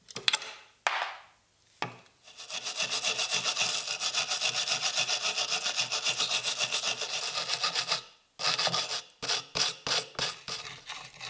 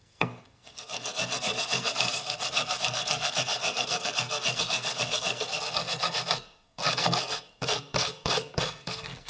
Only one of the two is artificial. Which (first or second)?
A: second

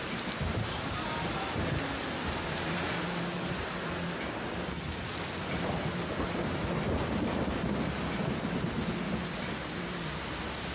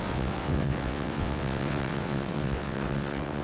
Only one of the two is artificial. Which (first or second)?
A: second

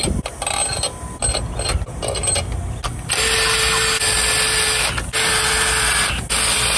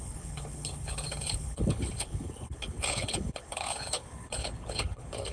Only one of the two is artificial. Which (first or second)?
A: second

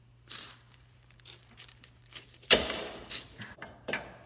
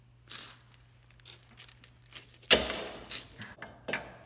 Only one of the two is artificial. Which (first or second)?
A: first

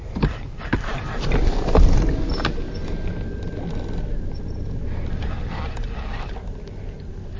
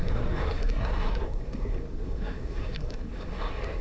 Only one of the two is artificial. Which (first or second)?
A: second